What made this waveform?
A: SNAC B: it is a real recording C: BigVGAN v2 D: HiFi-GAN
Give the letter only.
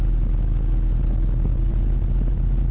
B